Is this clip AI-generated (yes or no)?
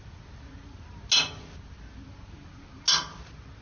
no